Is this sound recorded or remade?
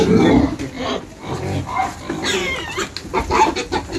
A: recorded